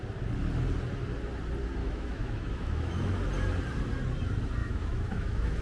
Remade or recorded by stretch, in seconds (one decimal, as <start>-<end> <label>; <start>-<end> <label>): 0.0-1.8 recorded; 1.8-3.1 remade; 3.1-4.6 recorded; 4.6-5.6 remade